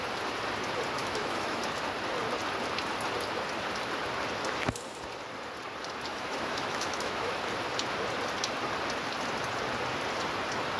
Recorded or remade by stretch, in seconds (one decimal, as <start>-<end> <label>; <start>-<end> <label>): 0.0-1.0 recorded; 1.0-1.6 remade; 1.6-6.1 recorded; 6.1-7.4 remade; 7.4-10.8 recorded